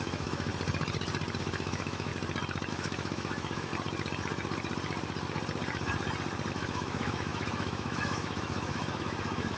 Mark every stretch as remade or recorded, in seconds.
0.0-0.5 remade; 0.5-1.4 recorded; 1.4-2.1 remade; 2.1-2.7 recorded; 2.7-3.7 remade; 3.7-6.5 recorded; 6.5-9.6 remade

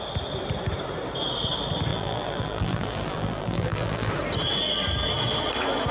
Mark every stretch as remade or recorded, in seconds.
0.0-1.9 recorded; 1.9-4.1 remade; 4.1-5.9 recorded

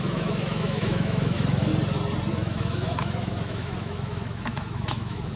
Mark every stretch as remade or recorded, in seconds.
0.0-1.7 remade; 1.7-2.3 recorded; 2.3-5.4 remade

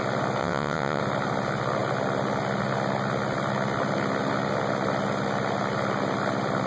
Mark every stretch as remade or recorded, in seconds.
0.0-0.4 recorded; 0.4-1.0 remade; 1.0-6.7 recorded

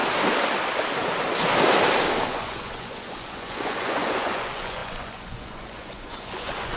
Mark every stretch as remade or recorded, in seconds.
0.0-2.3 recorded; 2.3-6.8 remade